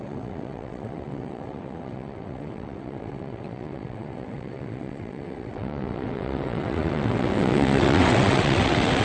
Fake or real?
fake